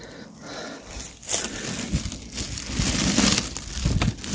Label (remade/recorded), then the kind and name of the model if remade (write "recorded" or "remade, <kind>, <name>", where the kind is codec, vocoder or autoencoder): recorded